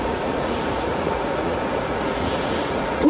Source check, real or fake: fake